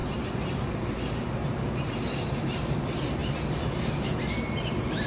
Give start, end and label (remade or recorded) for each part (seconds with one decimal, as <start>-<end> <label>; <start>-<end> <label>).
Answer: 0.0-5.1 remade